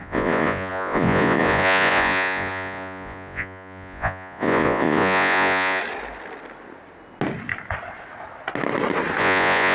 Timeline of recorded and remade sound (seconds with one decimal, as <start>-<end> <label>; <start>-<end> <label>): 0.0-5.8 remade; 5.8-9.2 recorded; 9.2-9.7 remade